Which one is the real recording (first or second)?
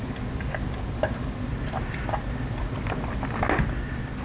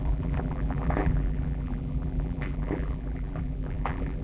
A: first